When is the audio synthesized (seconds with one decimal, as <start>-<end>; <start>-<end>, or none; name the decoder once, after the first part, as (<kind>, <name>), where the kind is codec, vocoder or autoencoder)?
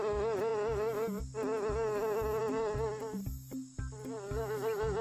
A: none